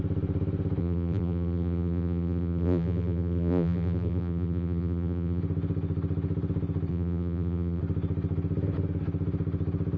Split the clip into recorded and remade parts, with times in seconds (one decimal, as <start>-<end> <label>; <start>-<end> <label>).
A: 0.0-0.8 recorded; 0.8-5.4 remade; 5.4-6.9 recorded; 6.9-7.8 remade; 7.8-10.0 recorded